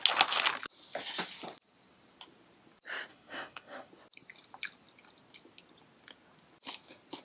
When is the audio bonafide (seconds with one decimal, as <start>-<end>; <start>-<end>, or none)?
0.0-3.1; 3.9-7.2